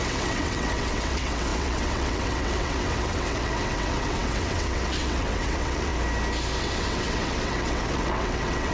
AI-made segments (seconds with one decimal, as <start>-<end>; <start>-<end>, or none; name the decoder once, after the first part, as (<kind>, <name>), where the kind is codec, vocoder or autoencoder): 0.0-5.9 (vocoder, WaveNeXt); 6.6-8.7

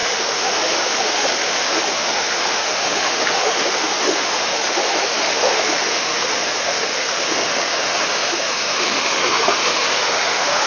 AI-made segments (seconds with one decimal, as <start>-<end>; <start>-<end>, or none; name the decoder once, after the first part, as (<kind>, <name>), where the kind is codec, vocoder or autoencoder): 0.0-10.7 (autoencoder, DAC-VAE)

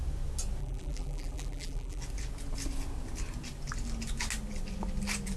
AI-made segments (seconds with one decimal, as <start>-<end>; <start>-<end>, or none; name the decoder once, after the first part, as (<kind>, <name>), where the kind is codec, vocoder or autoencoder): 0.6-2.0 (vocoder, BigVGAN v2)